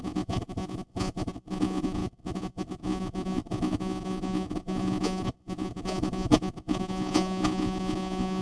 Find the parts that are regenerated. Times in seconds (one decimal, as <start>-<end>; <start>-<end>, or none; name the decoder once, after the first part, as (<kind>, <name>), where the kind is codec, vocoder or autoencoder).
0.0-8.4 (vocoder, Vocos)